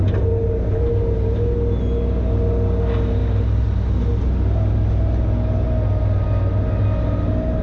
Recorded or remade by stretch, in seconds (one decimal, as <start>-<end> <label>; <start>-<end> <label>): 0.0-7.6 recorded